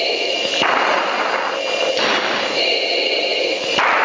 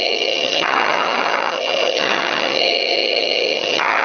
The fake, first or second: second